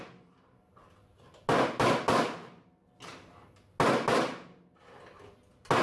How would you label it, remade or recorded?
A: recorded